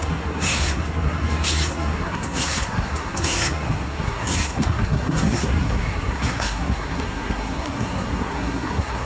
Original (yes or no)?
no